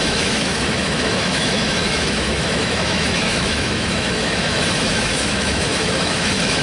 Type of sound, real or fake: fake